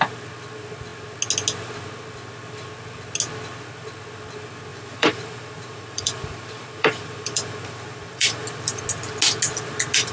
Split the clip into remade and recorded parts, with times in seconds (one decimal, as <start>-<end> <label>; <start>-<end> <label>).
0.0-4.7 recorded; 4.7-8.8 remade; 8.8-10.1 recorded